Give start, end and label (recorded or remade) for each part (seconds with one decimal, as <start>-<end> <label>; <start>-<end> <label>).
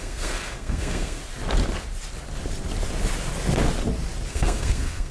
0.0-1.2 remade; 1.2-4.3 recorded; 4.3-5.1 remade